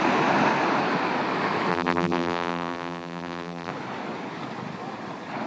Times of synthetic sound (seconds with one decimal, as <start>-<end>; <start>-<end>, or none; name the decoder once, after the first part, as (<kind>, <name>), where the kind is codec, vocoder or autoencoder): 1.7-3.7 (vocoder, BigVGAN v2)